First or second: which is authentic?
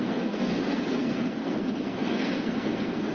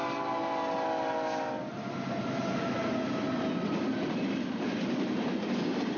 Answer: second